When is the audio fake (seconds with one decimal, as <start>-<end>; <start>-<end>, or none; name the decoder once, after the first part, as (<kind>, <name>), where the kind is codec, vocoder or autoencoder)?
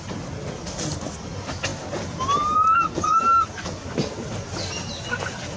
none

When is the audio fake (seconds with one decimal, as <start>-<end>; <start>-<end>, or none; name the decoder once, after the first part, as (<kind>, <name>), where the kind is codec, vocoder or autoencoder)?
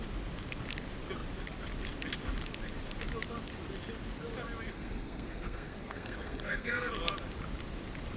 4.7-6.9 (codec, SNAC)